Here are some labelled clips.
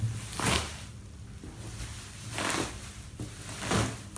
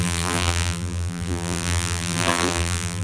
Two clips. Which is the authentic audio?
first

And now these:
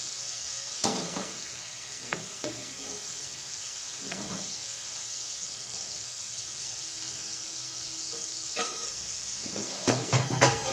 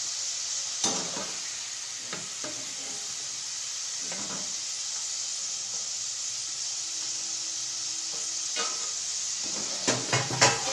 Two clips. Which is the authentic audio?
second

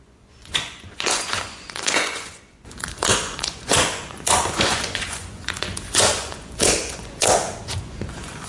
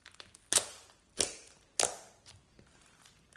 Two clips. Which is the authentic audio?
second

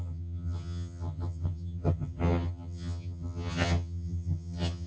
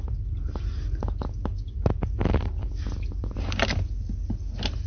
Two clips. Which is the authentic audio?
second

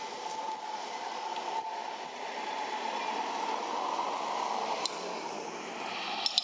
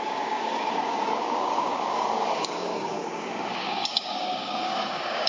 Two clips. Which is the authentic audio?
first